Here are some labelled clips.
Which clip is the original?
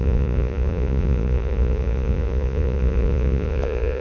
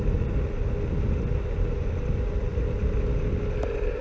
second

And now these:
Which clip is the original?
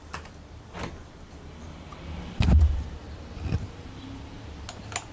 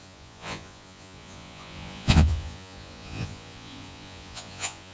first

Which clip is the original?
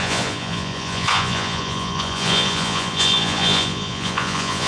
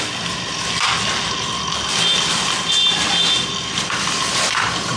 second